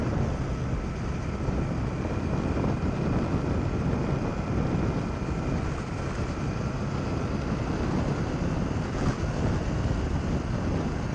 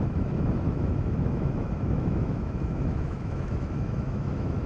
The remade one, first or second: second